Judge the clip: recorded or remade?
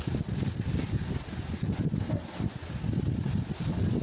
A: recorded